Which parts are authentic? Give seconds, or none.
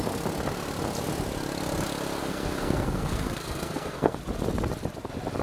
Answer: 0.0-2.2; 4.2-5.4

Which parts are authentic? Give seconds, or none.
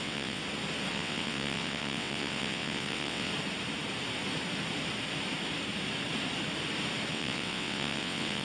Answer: 0.4-0.9; 3.3-7.1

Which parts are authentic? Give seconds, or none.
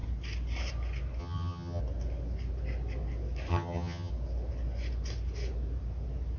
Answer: 0.0-1.2; 1.8-3.5; 4.1-6.4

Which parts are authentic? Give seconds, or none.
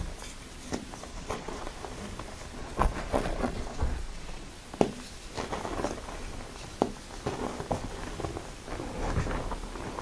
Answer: 0.0-1.1; 1.7-2.6; 4.5-10.0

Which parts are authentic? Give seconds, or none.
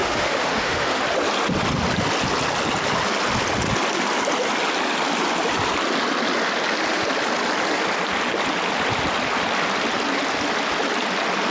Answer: 1.0-11.5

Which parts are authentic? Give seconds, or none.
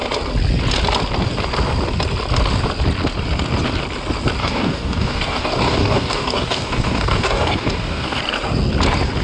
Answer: 0.0-4.4; 8.2-9.2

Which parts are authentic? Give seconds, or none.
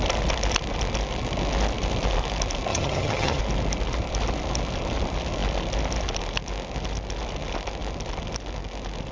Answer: 0.0-2.7; 3.4-9.1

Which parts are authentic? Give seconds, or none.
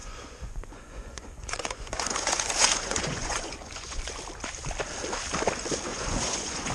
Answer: 4.0-5.9